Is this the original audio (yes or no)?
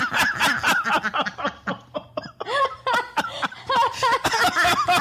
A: yes